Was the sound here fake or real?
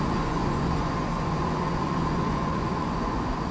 fake